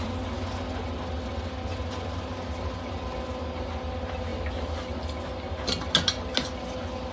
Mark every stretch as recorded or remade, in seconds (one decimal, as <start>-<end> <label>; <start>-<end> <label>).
0.0-7.1 recorded